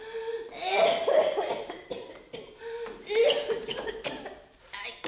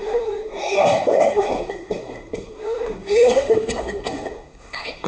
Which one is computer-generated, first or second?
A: second